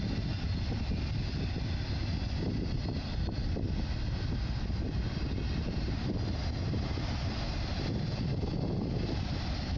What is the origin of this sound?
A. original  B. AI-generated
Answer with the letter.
A